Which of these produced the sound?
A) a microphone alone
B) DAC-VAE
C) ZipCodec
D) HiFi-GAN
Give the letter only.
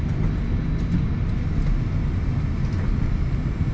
A